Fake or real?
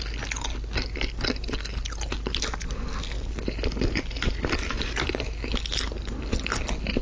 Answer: real